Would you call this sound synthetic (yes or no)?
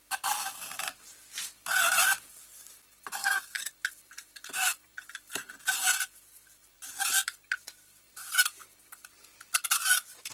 no